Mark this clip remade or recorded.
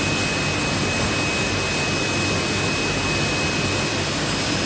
recorded